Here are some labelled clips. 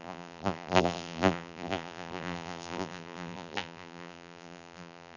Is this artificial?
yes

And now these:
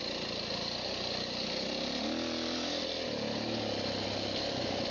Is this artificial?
no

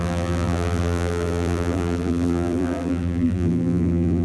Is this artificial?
yes